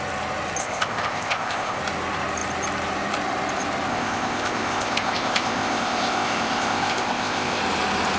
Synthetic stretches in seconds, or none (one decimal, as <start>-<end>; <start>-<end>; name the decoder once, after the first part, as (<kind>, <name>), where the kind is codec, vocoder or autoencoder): 0.6-1.8 (codec, ZipCodec); 3.9-7.6